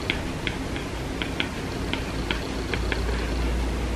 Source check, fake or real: real